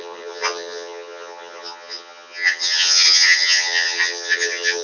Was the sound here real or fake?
fake